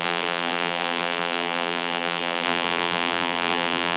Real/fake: fake